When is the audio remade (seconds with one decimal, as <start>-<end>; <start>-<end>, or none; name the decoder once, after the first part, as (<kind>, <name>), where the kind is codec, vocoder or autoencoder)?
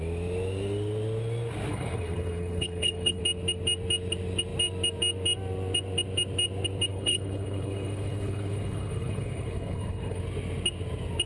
1.7-3.2 (codec, HILCodec); 6.9-10.2